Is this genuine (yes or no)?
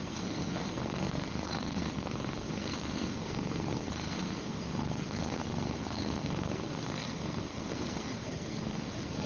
no